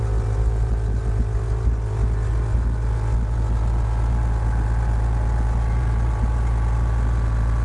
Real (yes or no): yes